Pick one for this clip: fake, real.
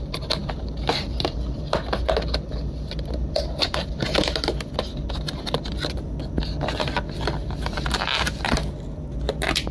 real